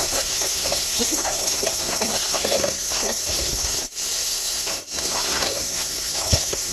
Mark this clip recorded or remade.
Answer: remade